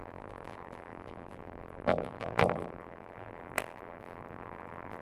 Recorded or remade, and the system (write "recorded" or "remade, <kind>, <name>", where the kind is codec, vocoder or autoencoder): remade, vocoder, BigVGAN v2